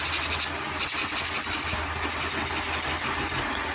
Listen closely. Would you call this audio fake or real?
real